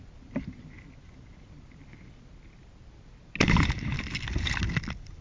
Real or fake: real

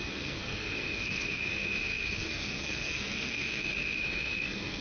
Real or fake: fake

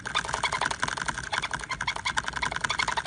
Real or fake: real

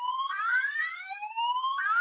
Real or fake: fake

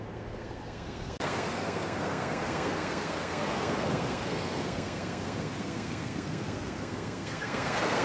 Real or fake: fake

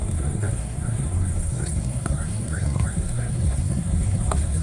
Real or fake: fake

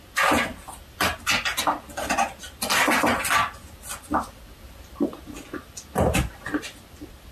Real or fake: real